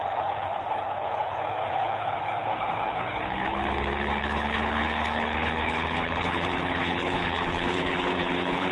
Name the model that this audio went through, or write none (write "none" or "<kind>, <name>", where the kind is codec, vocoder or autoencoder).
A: codec, HILCodec